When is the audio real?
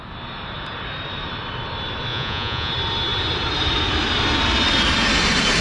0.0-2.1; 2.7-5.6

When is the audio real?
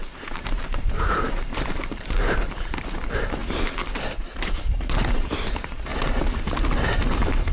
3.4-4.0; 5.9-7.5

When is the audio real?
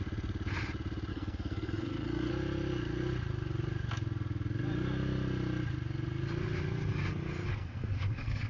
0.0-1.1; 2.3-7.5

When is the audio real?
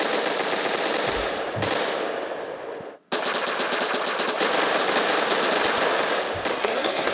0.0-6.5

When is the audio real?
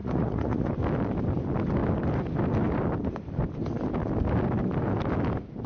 0.7-5.7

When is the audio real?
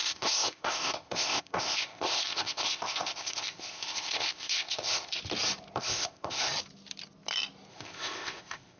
5.2-5.8; 6.5-7.7